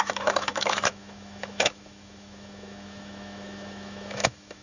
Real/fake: fake